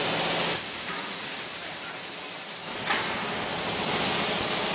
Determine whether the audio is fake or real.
real